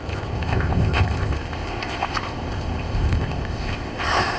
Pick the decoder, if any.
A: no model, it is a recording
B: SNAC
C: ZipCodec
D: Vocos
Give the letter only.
C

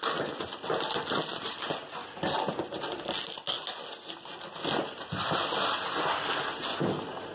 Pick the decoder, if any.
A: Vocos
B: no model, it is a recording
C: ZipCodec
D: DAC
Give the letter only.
B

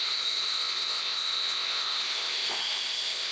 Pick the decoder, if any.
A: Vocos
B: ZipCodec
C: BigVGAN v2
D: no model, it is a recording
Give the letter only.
B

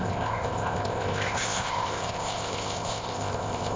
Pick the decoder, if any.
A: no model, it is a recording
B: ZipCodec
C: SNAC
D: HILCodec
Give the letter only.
B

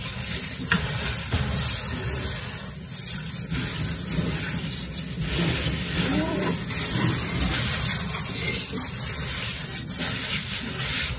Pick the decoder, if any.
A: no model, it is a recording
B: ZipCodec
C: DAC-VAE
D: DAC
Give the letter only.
A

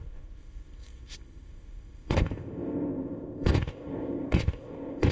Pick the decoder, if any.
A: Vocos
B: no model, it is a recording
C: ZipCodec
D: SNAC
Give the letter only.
C